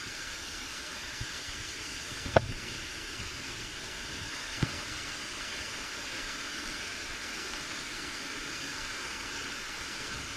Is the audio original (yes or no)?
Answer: no